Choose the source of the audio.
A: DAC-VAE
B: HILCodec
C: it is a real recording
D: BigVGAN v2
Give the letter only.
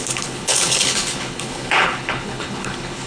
B